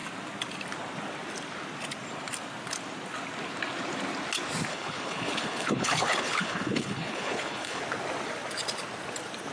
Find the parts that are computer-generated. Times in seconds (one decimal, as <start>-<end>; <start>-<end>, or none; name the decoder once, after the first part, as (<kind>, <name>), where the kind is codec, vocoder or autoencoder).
4.7-7.8 (codec, HILCodec)